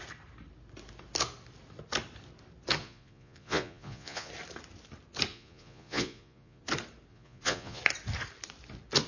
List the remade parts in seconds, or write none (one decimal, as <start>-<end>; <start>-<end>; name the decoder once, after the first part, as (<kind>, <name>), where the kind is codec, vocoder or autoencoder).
2.8-4.3 (vocoder, Vocos); 5.3-6.6; 7.1-7.8